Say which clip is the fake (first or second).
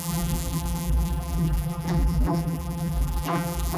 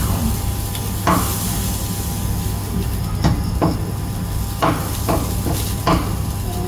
first